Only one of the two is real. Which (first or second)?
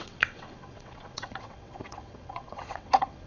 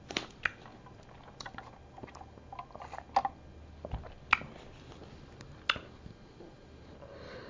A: second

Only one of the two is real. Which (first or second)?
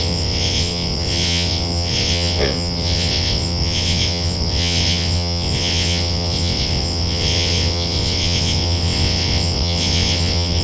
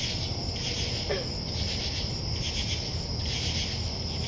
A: second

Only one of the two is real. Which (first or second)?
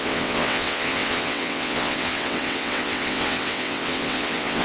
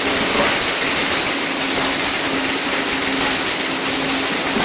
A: second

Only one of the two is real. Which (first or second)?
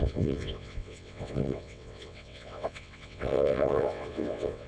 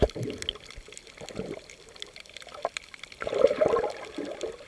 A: second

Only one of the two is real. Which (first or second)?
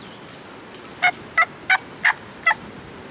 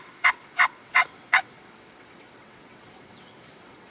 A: first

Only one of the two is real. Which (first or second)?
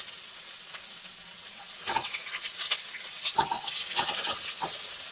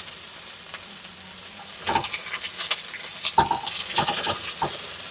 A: second